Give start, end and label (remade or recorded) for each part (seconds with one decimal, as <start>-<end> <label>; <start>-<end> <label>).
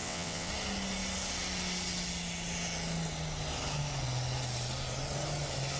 0.0-0.5 remade; 0.5-5.8 recorded